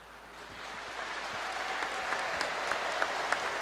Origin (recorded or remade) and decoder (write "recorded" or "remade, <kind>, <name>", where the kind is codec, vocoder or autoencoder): recorded